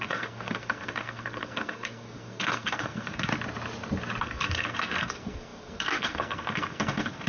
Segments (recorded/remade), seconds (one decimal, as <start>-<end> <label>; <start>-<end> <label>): 0.0-3.3 remade; 3.3-4.2 recorded; 4.2-7.3 remade